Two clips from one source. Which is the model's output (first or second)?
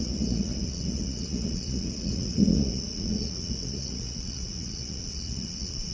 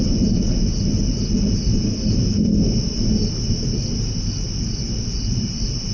first